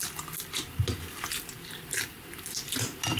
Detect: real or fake fake